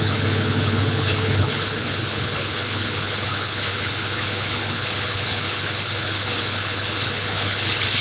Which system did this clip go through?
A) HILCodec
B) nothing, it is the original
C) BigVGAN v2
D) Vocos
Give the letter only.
A